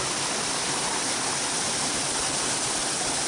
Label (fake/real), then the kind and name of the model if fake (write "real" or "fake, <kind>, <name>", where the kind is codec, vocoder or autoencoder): real